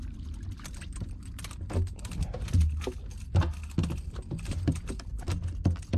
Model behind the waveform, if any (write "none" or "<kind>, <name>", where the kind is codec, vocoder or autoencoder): none